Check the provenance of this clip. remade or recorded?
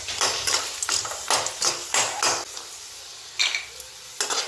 recorded